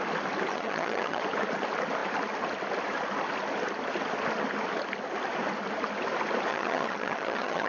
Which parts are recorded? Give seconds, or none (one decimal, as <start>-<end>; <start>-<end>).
0.0-0.5; 1.2-6.5